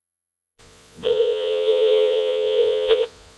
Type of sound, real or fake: fake